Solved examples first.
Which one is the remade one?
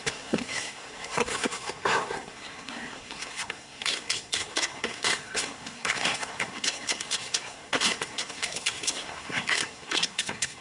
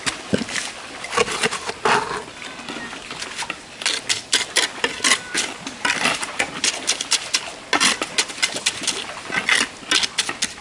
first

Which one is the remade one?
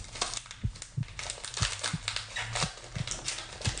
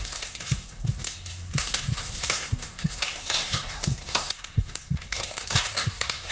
second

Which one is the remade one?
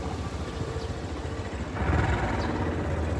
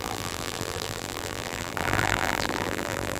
second